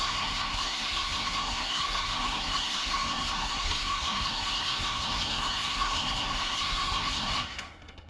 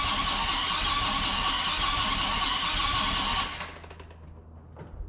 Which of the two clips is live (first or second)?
second